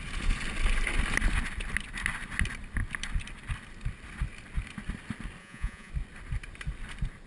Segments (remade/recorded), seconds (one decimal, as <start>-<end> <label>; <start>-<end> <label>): 0.0-5.4 recorded; 5.4-5.9 remade; 5.9-7.3 recorded